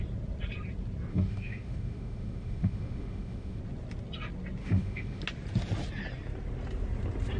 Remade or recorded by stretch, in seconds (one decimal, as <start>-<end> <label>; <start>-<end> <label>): 0.0-1.1 recorded; 1.1-3.6 remade; 3.6-4.6 recorded; 4.6-5.2 remade; 5.2-7.4 recorded